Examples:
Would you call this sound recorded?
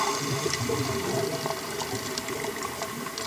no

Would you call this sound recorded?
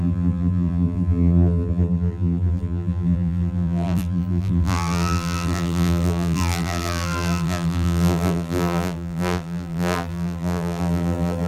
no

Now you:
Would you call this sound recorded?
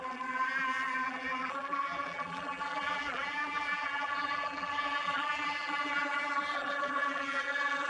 no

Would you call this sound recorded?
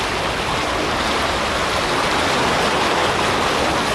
yes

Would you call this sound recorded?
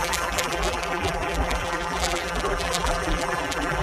no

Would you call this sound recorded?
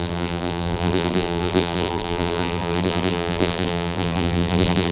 no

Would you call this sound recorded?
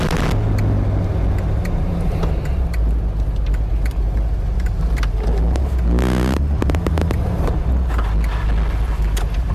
yes